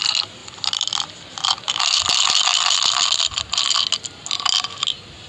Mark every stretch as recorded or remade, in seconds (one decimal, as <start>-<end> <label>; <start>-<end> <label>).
0.0-0.4 recorded; 0.4-1.7 remade; 1.7-5.3 recorded